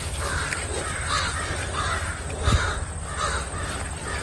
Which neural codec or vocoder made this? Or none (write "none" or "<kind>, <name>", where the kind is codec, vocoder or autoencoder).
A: none